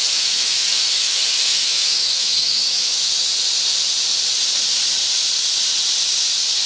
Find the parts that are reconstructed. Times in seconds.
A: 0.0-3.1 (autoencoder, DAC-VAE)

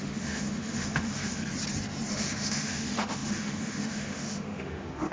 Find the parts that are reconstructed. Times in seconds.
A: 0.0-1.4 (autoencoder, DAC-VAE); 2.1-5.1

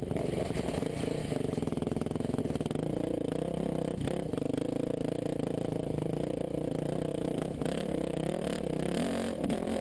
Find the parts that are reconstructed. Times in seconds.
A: 1.2-2.4 (autoencoder, DAC-VAE); 7.1-8.3